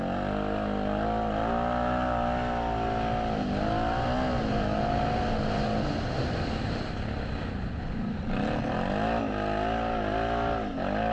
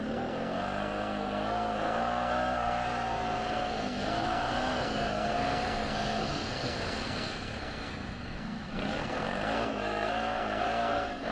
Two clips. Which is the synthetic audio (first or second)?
second